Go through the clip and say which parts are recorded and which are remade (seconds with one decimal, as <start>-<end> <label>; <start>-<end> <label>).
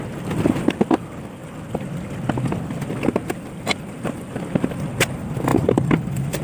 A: 0.0-5.5 recorded; 5.5-6.4 remade